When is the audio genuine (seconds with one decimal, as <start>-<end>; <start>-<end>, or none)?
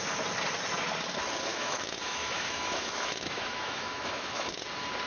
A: 0.0-1.5; 4.6-5.1